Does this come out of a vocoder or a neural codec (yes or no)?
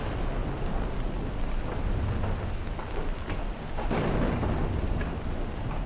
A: no